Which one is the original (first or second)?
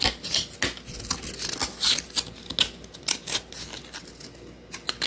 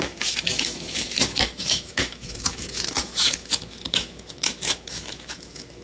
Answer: first